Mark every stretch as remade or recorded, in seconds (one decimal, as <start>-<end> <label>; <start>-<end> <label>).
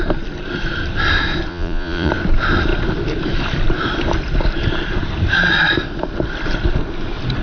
0.0-1.5 recorded; 1.5-2.1 remade; 2.1-7.4 recorded